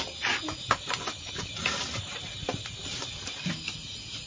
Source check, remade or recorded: recorded